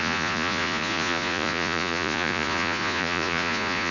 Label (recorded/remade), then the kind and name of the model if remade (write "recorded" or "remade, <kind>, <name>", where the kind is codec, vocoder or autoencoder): remade, vocoder, Vocos